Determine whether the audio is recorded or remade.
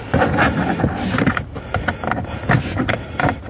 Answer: recorded